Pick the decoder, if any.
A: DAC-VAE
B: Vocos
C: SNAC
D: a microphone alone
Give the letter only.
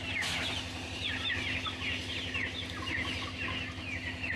D